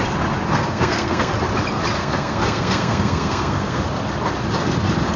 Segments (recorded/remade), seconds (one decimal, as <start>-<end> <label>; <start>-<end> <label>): 0.0-0.5 recorded; 0.5-1.3 remade; 1.3-2.0 recorded; 2.0-3.8 remade; 3.8-5.2 recorded

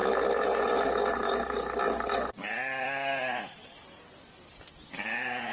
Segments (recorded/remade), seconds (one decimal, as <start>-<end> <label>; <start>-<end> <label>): 0.0-5.5 recorded

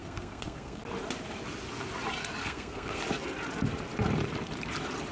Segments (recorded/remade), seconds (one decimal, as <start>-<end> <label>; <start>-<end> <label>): 0.0-0.8 remade; 0.8-2.4 recorded; 2.4-3.0 remade; 3.0-5.1 recorded